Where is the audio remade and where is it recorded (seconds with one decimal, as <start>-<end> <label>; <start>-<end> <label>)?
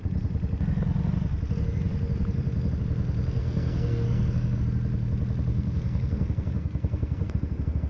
0.0-3.4 recorded; 3.4-4.6 remade; 4.6-5.5 recorded; 5.5-7.9 remade